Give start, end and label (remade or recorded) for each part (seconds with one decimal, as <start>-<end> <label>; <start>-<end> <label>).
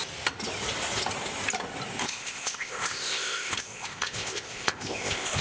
0.0-2.0 recorded; 2.0-5.4 remade